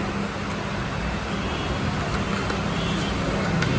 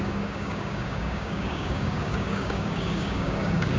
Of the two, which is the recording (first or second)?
first